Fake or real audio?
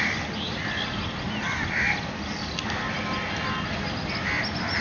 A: real